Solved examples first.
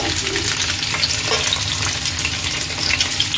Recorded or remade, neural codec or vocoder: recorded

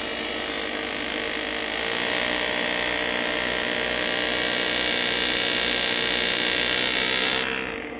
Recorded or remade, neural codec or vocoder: recorded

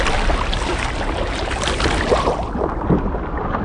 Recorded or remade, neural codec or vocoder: recorded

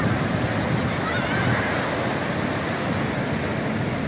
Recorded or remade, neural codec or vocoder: recorded